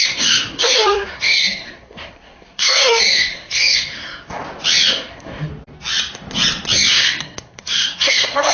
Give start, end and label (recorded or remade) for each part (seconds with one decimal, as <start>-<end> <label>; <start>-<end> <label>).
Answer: 0.0-4.4 remade; 4.4-4.9 recorded; 4.9-5.5 remade; 5.5-6.9 recorded; 6.9-8.5 remade